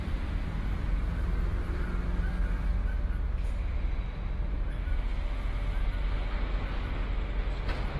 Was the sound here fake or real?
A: real